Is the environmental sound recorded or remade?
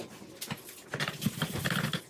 recorded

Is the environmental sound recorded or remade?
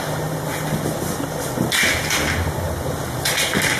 recorded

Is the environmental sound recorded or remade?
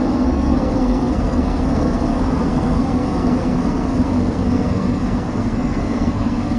remade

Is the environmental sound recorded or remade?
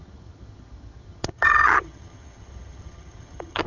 remade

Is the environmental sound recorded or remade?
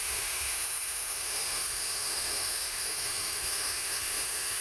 remade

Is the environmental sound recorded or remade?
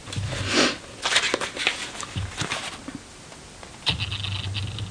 recorded